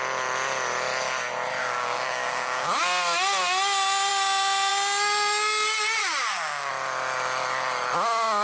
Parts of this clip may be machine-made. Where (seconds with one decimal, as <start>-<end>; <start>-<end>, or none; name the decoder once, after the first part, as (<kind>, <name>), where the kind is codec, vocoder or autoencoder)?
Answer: 1.6-2.8 (codec, DAC); 6.0-6.7